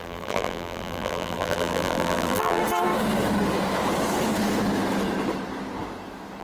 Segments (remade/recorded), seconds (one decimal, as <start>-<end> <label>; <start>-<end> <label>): 0.0-2.6 remade; 2.6-6.4 recorded